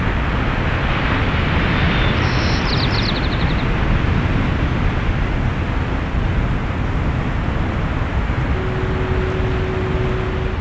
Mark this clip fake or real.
real